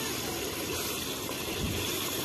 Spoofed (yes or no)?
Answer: yes